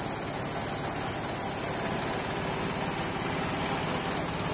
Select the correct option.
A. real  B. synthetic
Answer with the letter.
A